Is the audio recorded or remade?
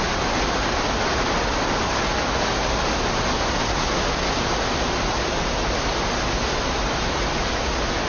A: recorded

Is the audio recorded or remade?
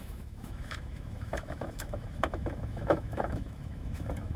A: remade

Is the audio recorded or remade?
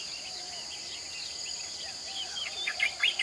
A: recorded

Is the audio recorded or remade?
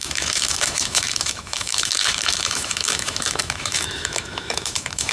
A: remade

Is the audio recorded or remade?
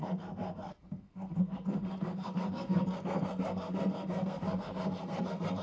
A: remade